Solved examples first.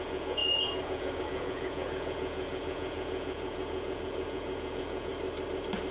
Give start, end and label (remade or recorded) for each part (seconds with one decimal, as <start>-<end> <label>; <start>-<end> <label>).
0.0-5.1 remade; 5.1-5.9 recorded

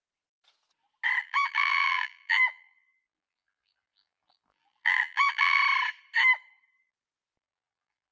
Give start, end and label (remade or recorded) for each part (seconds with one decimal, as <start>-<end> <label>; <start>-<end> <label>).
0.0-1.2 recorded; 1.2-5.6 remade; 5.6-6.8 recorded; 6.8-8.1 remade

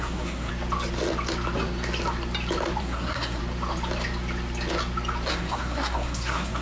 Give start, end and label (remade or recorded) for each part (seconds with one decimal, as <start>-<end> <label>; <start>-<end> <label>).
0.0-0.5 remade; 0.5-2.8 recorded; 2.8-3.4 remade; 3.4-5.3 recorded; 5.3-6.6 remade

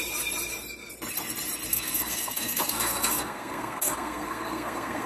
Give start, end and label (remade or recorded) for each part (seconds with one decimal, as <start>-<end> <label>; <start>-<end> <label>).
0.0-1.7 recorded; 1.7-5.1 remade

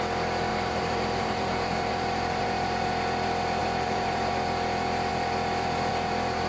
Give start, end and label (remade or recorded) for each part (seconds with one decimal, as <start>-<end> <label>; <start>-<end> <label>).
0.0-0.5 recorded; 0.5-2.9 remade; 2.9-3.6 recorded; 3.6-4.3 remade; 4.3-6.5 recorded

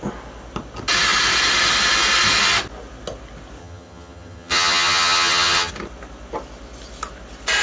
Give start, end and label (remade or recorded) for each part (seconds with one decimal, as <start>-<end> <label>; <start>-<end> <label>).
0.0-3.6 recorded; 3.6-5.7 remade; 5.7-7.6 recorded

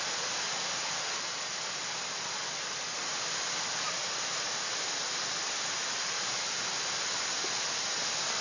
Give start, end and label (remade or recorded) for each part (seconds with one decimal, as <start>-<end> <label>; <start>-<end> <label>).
0.0-8.4 recorded

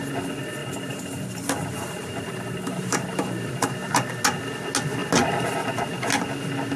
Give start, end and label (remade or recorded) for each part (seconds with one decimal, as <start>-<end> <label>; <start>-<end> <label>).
0.0-0.6 recorded; 0.6-3.9 remade; 3.9-6.8 recorded